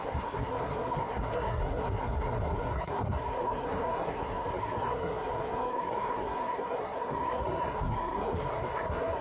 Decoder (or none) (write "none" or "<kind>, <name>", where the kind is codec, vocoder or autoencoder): codec, SNAC